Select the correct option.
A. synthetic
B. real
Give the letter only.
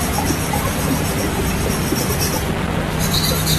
B